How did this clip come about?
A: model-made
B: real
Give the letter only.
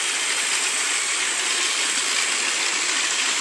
B